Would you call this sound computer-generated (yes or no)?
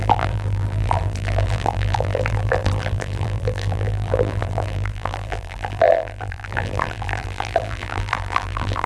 yes